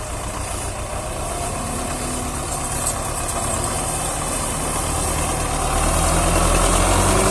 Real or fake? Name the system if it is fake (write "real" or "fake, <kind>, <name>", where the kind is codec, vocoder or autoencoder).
real